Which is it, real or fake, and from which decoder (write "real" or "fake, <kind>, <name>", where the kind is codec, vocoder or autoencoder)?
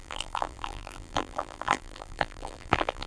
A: fake, vocoder, BigVGAN v2